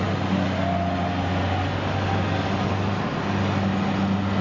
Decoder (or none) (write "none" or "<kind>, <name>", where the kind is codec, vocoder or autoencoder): none